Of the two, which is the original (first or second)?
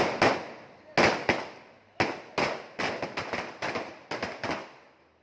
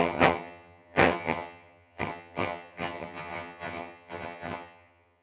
first